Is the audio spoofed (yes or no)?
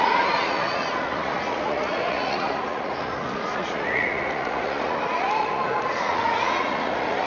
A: yes